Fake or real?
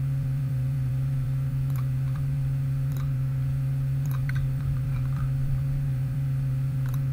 fake